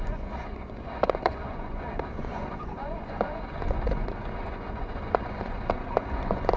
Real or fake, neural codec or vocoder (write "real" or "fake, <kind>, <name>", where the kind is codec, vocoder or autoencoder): fake, vocoder, Vocos